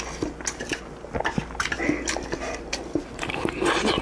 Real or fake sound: real